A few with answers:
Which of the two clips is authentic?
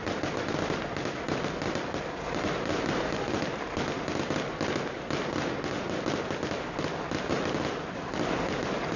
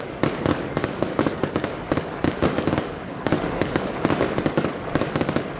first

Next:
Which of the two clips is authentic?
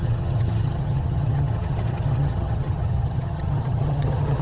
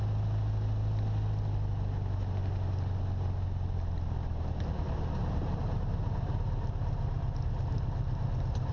second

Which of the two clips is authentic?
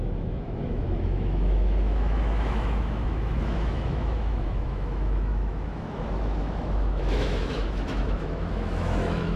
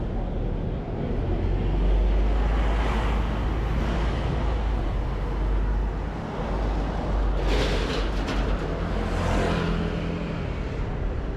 second